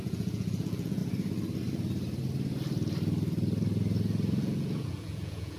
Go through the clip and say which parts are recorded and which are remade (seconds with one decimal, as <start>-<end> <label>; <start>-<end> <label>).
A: 0.0-1.0 remade; 1.0-4.4 recorded; 4.4-5.6 remade